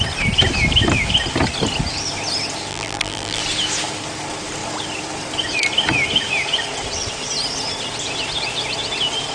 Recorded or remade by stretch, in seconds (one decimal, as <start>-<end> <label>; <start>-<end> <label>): 0.0-2.7 recorded; 2.7-3.4 remade; 3.4-9.3 recorded